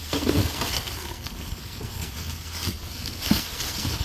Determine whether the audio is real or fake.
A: fake